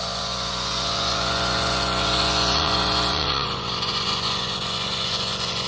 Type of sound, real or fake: fake